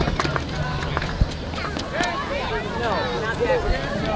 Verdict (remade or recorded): recorded